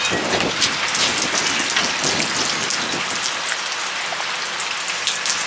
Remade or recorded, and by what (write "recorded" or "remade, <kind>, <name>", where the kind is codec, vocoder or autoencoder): recorded